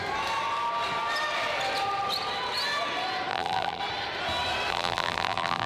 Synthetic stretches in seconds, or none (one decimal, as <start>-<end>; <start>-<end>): 3.3-3.8; 4.7-5.7